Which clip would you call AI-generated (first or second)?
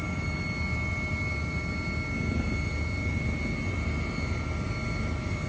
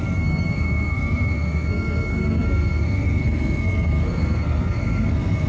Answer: second